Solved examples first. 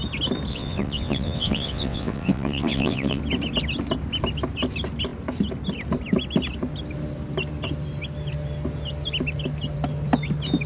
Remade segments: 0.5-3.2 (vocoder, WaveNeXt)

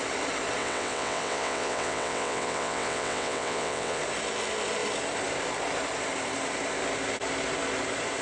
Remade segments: 0.6-4.0 (vocoder, WaveNeXt)